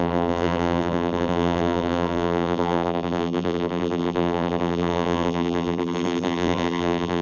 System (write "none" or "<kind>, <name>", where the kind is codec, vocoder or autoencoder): vocoder, BigVGAN v2